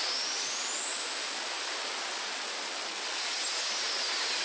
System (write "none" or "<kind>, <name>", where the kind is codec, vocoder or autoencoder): none